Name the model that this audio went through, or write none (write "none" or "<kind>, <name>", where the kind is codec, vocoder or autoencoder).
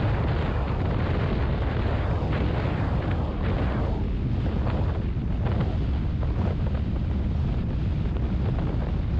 none